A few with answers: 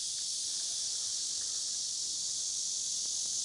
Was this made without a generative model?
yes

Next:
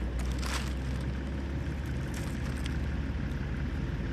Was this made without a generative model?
yes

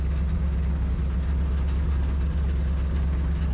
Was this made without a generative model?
yes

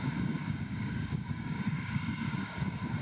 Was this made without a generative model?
no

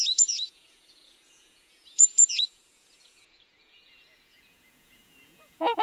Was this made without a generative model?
no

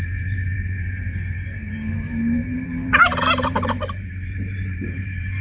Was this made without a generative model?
no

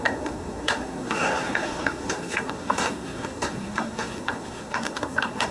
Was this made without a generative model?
no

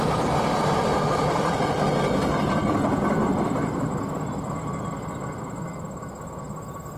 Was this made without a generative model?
yes